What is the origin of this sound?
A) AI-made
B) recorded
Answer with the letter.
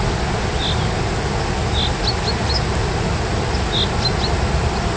B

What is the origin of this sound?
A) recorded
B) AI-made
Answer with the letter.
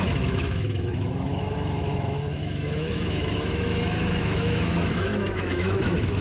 B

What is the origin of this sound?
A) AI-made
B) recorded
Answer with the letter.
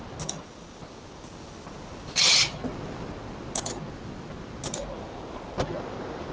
B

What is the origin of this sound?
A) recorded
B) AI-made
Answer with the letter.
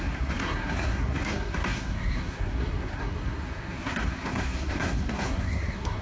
B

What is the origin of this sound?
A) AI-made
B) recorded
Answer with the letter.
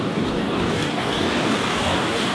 A